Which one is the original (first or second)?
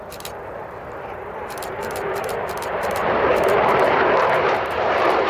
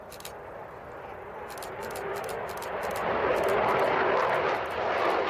second